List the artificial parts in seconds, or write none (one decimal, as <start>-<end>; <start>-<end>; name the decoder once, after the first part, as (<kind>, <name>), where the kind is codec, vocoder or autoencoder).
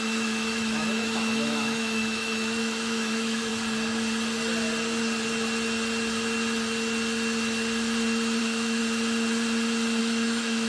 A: 0.0-3.5 (autoencoder, DAC-VAE); 8.4-8.8; 10.0-10.7